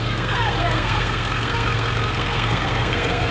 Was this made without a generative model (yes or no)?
no